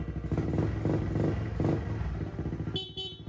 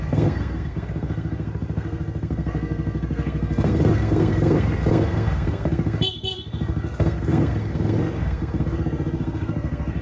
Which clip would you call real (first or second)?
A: first